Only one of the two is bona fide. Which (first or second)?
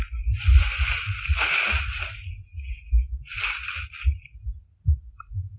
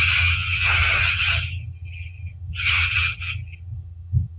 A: first